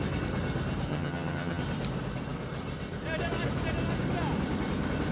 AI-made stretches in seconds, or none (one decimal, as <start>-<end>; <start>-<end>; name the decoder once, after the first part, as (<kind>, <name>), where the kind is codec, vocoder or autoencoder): 0.9-1.6 (vocoder, HiFi-GAN)